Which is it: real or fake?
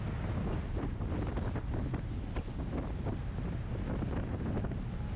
real